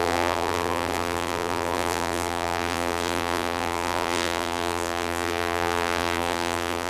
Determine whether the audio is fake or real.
fake